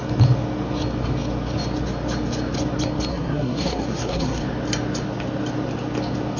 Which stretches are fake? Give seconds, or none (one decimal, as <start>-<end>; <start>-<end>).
3.1-4.4